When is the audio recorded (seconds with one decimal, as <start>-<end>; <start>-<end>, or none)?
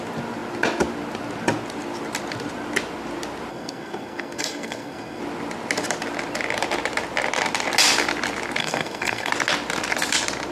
0.0-3.5; 5.2-8.6; 9.3-10.5